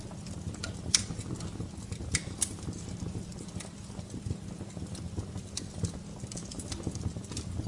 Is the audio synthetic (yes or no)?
no